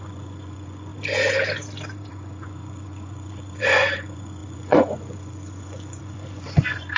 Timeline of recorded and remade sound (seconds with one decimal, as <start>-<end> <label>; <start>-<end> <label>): 0.0-0.9 remade; 0.9-2.1 recorded; 2.1-7.0 remade